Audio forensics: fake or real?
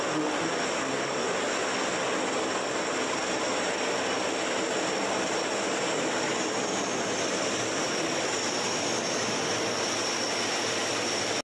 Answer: real